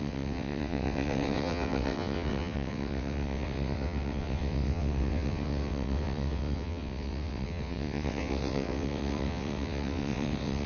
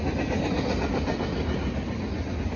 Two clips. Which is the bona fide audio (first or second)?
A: second